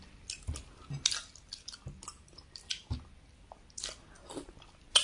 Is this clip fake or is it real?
real